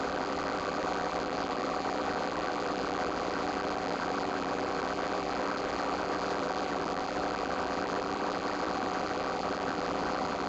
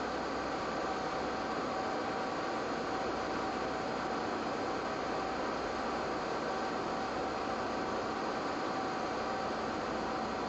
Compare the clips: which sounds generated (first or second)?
first